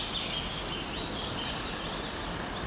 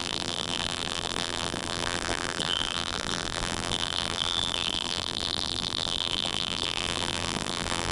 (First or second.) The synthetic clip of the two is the second